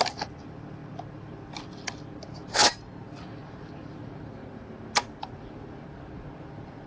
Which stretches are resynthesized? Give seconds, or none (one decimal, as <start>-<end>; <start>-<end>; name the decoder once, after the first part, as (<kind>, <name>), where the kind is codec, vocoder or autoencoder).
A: none